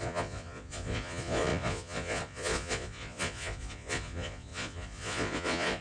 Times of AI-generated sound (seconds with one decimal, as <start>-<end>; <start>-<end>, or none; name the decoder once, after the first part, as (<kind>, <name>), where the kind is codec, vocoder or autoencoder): 0.0-5.8 (vocoder, Vocos)